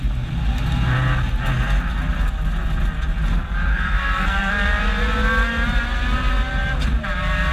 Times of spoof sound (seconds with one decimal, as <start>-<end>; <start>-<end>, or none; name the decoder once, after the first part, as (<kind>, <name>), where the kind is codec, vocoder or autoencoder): 3.7-4.5 (codec, SNAC)